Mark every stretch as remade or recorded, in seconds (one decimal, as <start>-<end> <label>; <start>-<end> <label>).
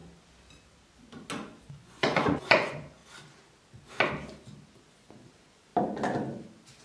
0.0-1.7 recorded; 1.7-3.0 remade; 3.0-4.8 recorded; 4.8-5.7 remade; 5.7-6.8 recorded